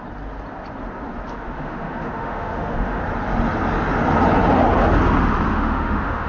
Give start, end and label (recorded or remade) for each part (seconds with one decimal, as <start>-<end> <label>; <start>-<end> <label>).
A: 0.0-1.3 recorded; 1.3-3.0 remade; 3.0-5.5 recorded; 5.5-6.3 remade